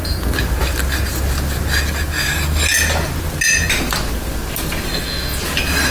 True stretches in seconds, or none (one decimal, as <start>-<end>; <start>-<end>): 0.0-5.9